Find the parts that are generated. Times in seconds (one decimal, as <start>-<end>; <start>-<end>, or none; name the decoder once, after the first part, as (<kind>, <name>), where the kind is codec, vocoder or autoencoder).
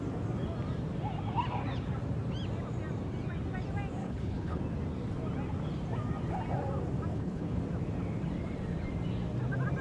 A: 4.0-4.6 (codec, HILCodec); 7.1-7.6